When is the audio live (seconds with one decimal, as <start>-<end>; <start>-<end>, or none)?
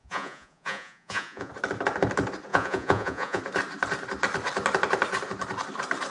1.5-2.5; 3.4-6.1